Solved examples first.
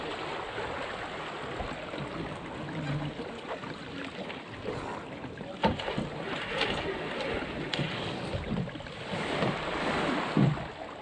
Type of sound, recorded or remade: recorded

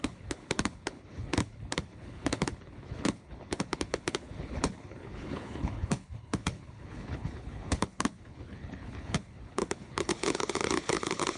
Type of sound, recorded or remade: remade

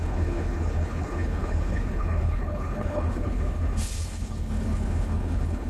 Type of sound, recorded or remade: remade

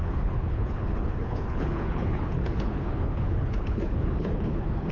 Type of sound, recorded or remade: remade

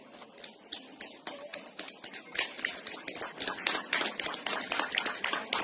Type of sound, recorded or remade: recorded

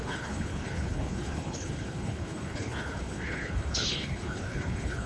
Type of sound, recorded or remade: remade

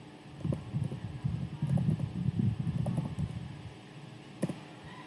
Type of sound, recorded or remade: recorded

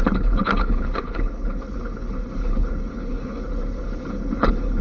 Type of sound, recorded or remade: remade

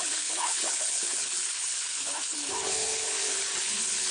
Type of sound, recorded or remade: remade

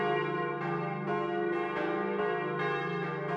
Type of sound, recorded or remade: recorded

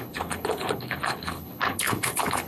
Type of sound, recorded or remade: remade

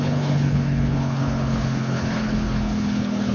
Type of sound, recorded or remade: remade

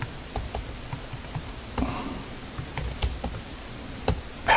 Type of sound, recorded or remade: recorded